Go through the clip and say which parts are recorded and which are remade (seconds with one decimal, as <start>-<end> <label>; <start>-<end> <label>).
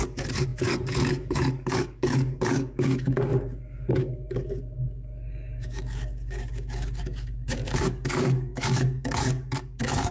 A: 0.0-10.1 remade